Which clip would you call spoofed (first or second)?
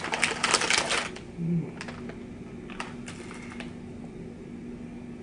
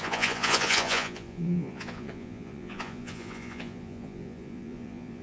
second